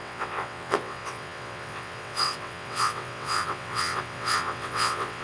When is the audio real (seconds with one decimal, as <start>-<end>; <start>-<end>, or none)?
none